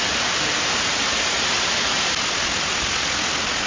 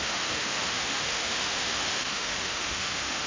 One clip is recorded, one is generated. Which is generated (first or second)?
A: second